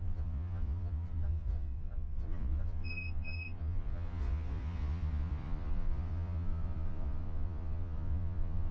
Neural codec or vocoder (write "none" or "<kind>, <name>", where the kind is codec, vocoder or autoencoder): vocoder, Vocos